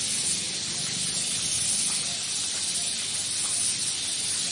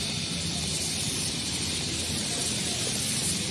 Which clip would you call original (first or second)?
first